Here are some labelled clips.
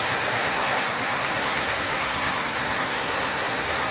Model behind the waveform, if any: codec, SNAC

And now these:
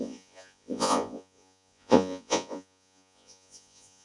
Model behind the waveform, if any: vocoder, Vocos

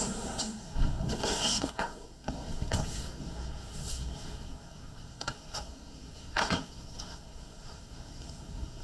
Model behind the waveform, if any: codec, SNAC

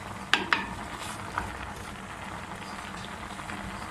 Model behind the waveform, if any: none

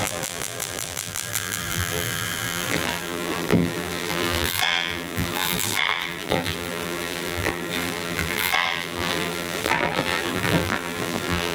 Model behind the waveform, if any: vocoder, BigVGAN v2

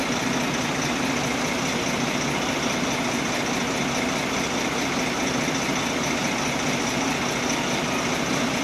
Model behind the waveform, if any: none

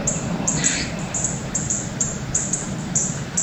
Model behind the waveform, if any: vocoder, BigVGAN v2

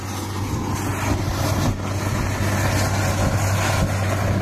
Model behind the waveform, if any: none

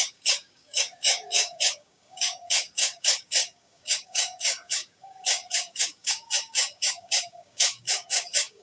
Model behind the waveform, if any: codec, DAC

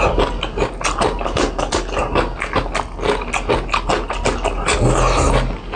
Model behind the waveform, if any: none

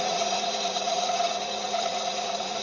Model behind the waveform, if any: vocoder, Vocos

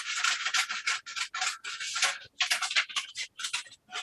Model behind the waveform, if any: none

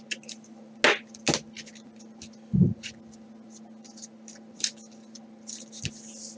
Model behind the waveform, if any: none